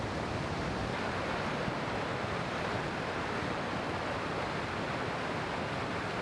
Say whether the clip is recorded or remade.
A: recorded